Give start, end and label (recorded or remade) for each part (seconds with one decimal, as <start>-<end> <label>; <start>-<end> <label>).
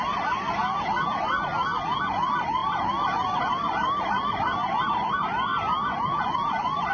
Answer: 0.0-0.6 remade; 0.6-2.2 recorded; 2.2-5.5 remade; 5.5-6.2 recorded; 6.2-6.9 remade